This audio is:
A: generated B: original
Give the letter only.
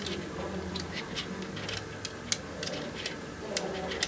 B